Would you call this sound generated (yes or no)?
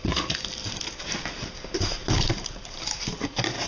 no